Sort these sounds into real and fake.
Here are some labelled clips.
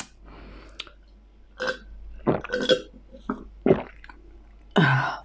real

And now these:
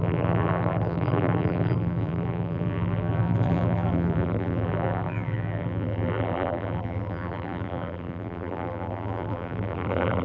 fake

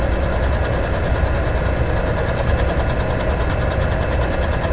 real